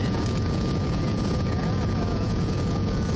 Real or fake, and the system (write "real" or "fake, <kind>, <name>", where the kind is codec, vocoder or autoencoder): fake, vocoder, Vocos